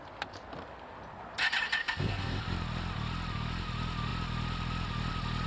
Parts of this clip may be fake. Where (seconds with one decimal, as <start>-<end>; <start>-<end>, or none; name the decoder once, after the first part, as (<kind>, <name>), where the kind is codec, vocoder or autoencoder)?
1.8-2.4 (codec, SNAC)